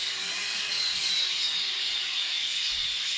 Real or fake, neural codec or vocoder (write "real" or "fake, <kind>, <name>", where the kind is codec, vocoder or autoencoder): fake, codec, DAC